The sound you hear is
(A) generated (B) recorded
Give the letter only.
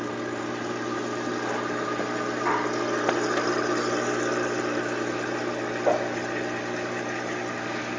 B